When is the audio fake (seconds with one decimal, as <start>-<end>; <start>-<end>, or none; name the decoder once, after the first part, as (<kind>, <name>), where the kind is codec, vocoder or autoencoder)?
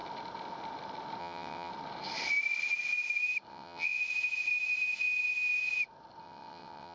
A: 1.2-1.7 (vocoder, WaveNeXt); 3.5-4.0; 6.2-6.9